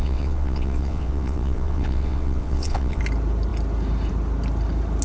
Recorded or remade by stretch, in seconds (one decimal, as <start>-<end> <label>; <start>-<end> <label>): 0.0-3.0 remade; 3.0-5.0 recorded

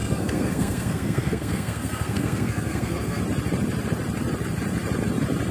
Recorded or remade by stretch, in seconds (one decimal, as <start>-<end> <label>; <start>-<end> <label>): 0.0-3.2 remade; 3.2-5.5 recorded